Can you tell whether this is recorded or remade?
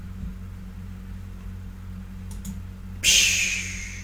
recorded